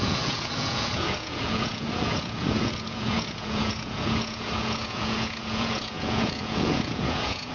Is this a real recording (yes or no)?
no